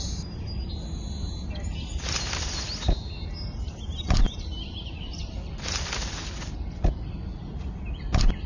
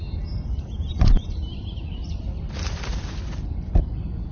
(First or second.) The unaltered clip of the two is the first